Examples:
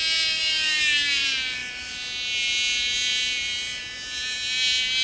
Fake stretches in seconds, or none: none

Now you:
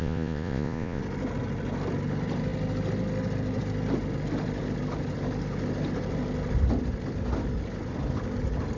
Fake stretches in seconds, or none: 0.0-1.0 (vocoder, Vocos)

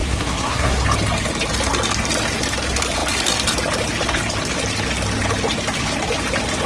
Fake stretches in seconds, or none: 0.0-0.8 (codec, SNAC)

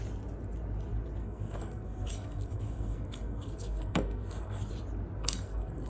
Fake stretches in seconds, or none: 1.2-4.7 (codec, SNAC); 5.2-5.9

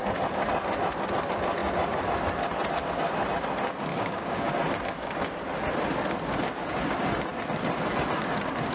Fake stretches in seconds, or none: 3.9-4.5 (codec, DAC)

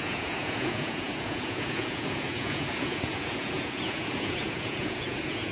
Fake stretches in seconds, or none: 0.0-5.5 (vocoder, Vocos)

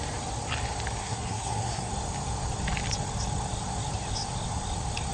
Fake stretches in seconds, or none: 1.0-1.9 (codec, SNAC)